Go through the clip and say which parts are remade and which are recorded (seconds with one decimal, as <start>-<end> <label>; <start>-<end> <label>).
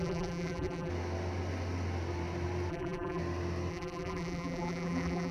0.0-0.9 remade; 0.9-2.7 recorded; 2.7-3.2 remade; 3.2-3.7 recorded; 3.7-5.3 remade